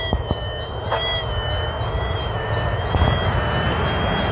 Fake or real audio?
real